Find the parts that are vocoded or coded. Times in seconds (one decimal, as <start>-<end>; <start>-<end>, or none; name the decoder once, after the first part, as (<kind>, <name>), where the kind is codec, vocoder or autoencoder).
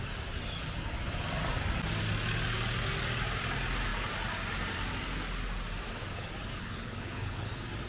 6.5-7.5 (codec, HILCodec)